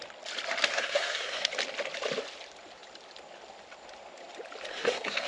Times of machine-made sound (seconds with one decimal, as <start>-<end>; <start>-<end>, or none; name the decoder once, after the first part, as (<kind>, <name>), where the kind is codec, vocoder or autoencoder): 0.7-1.5 (codec, SNAC); 4.7-5.3